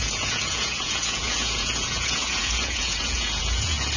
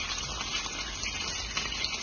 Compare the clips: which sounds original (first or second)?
second